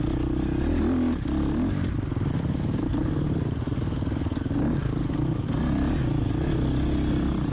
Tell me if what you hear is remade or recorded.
recorded